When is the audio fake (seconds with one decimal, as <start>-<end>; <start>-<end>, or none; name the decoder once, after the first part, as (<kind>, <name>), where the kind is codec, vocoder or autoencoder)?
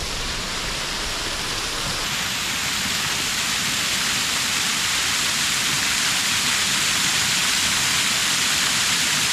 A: 8.2-9.3 (vocoder, BigVGAN v2)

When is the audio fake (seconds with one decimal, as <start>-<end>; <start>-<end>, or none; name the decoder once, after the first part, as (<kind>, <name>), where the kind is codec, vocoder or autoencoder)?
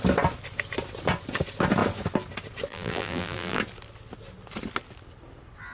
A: 2.7-3.6 (vocoder, BigVGAN v2)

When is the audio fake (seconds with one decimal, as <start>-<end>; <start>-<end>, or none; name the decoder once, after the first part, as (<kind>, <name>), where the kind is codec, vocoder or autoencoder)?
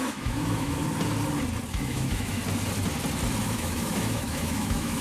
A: 0.0-0.8 (autoencoder, DAC-VAE); 1.7-2.4; 3.4-5.0